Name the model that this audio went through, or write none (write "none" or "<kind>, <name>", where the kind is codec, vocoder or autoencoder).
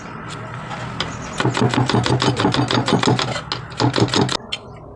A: none